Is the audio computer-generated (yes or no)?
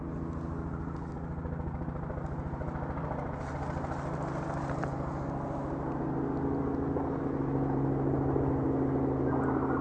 no